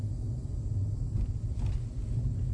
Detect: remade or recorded recorded